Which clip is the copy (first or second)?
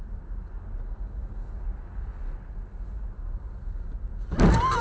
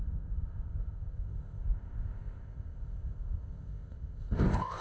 second